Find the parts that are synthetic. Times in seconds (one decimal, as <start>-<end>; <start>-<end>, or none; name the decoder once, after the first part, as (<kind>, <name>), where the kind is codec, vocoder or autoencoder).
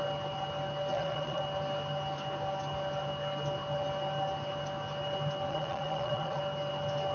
0.9-1.4 (vocoder, Vocos); 5.5-6.4